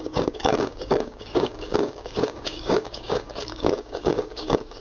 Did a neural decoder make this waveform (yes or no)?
yes